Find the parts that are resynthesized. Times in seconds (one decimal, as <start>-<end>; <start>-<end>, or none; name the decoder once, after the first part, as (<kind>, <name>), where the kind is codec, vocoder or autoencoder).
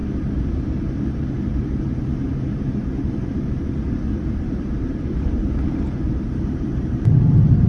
0.0-7.7 (vocoder, BigVGAN v2)